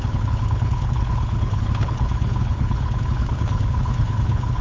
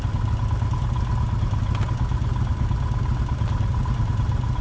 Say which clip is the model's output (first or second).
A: first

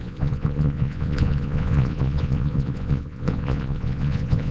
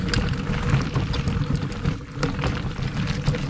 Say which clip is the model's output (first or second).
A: first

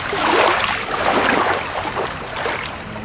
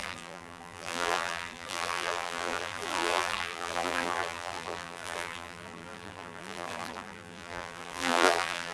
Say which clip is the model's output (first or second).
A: second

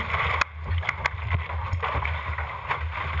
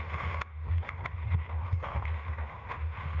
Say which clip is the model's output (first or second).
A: second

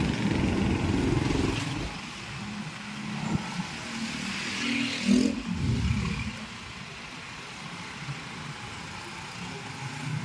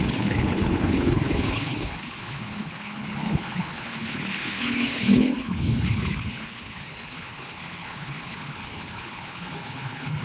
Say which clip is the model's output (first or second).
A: second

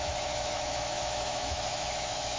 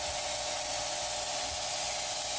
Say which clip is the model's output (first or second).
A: first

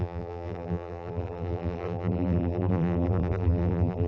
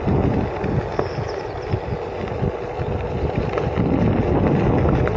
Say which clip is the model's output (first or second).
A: first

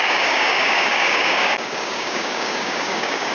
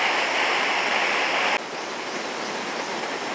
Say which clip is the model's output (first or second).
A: first